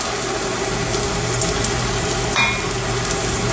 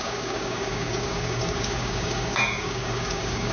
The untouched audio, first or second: first